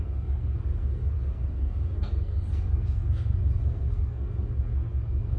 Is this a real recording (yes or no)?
no